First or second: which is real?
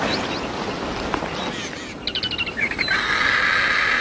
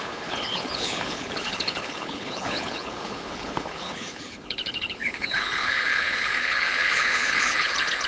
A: first